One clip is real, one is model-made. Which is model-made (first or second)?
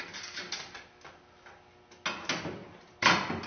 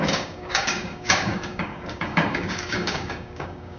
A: second